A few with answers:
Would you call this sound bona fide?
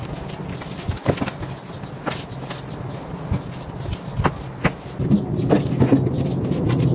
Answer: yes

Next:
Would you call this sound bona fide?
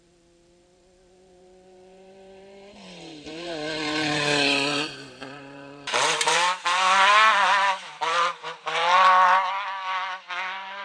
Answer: no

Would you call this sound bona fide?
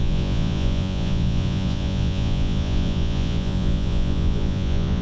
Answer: no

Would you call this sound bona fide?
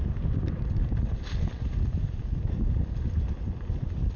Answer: yes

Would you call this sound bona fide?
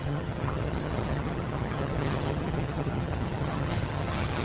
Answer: no